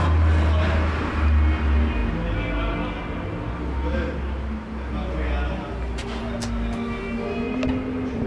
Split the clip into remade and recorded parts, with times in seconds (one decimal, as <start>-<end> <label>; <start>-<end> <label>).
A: 0.0-8.3 recorded